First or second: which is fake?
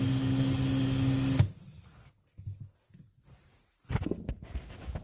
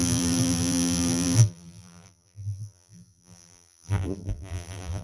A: second